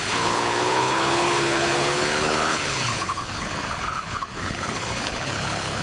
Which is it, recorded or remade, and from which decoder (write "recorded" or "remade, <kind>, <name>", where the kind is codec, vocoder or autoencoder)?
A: remade, codec, HILCodec